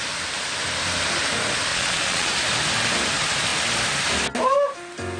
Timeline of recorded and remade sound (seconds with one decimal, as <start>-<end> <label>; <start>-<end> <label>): 0.0-1.7 recorded; 1.7-2.3 remade; 2.3-5.2 recorded